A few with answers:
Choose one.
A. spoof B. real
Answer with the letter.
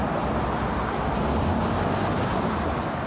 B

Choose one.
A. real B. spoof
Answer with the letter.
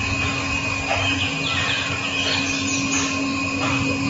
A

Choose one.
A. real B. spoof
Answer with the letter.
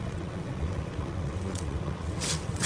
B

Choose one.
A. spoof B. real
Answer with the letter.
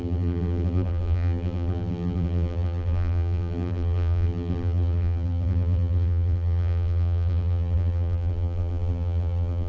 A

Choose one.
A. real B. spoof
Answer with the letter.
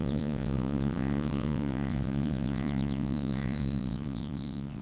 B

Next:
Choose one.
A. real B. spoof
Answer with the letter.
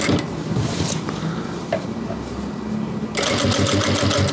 A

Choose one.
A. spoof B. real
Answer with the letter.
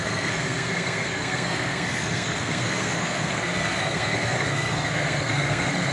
A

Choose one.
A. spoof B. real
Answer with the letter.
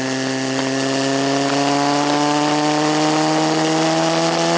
B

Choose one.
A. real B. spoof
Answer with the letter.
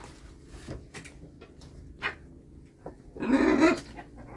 A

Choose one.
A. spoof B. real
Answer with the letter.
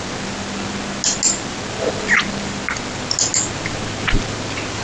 B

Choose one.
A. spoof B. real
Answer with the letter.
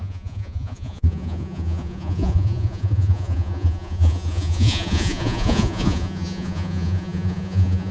A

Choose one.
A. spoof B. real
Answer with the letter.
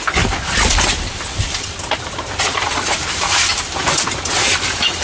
B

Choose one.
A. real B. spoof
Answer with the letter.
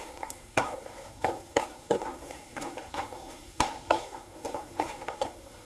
B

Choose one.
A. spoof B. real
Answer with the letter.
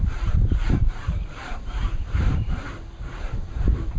A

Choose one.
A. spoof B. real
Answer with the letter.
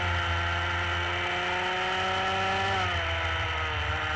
B